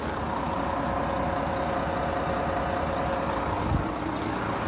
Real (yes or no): yes